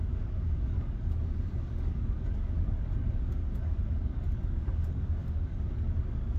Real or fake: fake